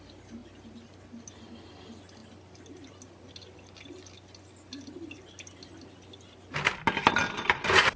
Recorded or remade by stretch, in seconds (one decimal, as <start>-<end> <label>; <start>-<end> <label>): 0.0-2.2 recorded; 2.2-2.9 remade; 2.9-7.2 recorded; 7.2-8.0 remade